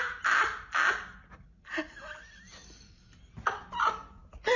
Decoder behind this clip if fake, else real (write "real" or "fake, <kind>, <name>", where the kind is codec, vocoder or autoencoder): real